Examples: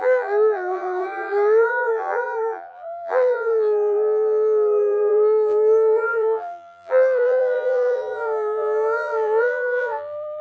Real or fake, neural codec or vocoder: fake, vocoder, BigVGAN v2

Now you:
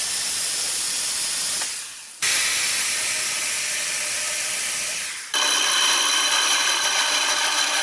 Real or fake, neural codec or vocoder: real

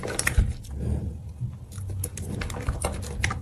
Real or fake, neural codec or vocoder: real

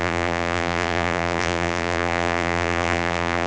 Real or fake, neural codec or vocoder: fake, vocoder, BigVGAN v2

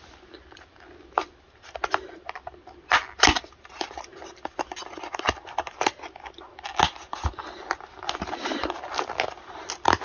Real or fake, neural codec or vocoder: real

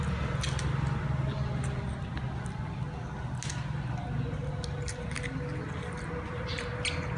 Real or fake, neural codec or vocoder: real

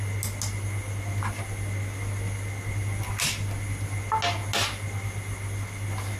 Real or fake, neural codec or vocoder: real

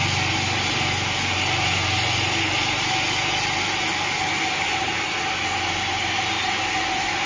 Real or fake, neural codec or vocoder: real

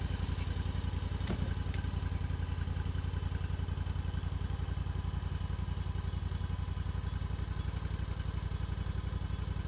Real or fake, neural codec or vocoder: real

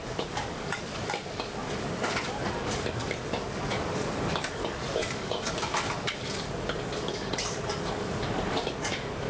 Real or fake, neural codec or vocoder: fake, codec, DAC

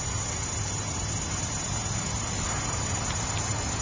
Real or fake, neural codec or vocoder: real